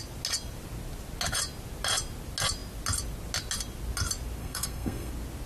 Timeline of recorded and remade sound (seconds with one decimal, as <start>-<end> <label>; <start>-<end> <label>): 0.0-4.4 recorded; 4.4-5.1 remade; 5.1-5.5 recorded